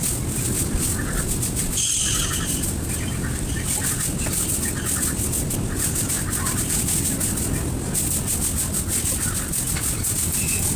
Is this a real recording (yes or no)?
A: yes